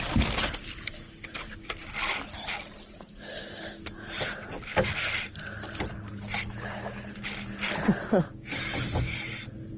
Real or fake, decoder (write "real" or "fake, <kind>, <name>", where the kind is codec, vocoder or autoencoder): real